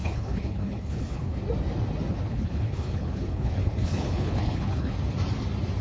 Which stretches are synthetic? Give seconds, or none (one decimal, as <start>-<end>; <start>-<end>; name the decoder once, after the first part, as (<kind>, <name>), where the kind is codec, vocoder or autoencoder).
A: 0.0-1.4 (codec, HILCodec); 2.1-5.0